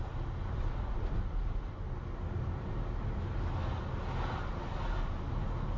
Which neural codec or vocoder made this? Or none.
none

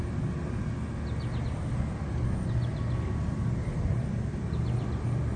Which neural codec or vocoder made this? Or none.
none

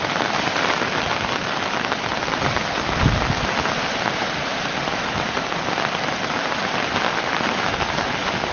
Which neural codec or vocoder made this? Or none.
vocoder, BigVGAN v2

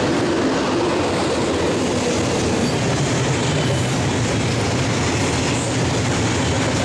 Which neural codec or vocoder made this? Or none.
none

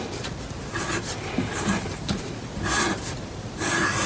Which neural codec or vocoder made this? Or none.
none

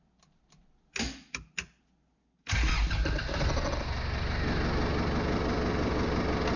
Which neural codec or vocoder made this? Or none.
none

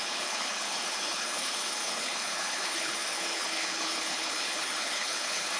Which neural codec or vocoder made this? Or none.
codec, HILCodec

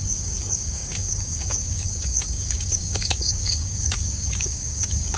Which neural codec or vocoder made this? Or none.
codec, DAC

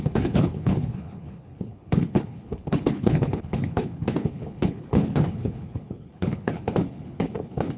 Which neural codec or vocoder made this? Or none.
codec, HILCodec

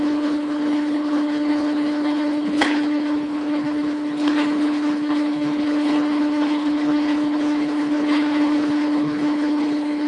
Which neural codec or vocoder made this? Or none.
codec, HILCodec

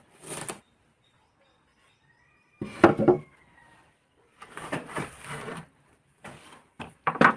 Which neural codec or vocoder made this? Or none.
none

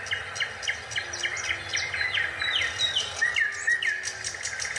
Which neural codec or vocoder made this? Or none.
none